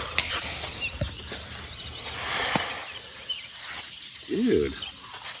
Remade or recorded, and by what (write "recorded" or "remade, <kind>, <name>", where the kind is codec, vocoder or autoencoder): recorded